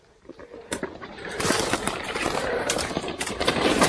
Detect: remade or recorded remade